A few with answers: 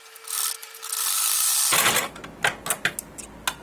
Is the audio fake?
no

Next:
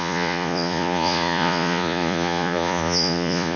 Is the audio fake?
yes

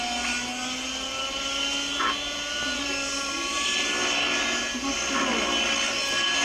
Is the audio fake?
no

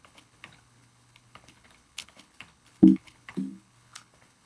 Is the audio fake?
yes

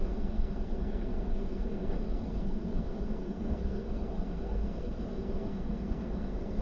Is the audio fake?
yes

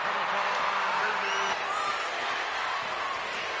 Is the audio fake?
no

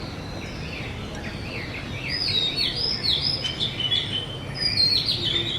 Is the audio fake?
no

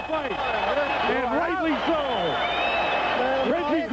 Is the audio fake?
no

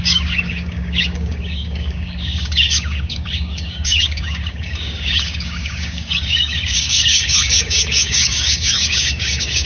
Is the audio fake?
yes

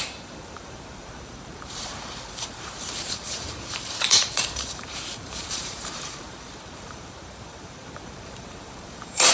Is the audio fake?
yes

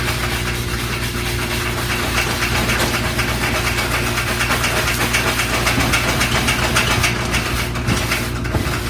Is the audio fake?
no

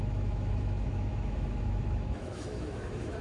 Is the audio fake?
yes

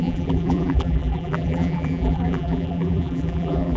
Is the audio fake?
yes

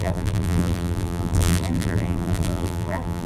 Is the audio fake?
yes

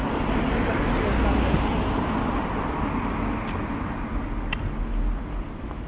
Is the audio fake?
no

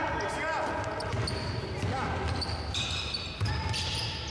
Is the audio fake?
no